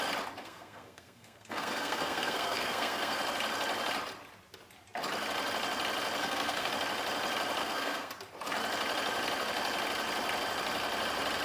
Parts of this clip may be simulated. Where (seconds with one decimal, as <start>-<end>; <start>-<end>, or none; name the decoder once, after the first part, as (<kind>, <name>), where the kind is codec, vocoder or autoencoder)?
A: 0.4-3.2 (codec, SNAC); 6.2-6.7; 7.6-8.1